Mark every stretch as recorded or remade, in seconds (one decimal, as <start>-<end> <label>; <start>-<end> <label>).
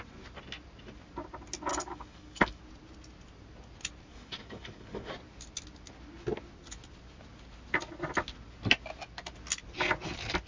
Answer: 0.0-1.7 recorded; 1.7-2.6 remade; 2.6-4.1 recorded; 4.1-5.1 remade; 5.1-10.5 recorded